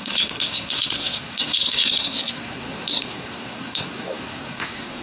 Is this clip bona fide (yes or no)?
no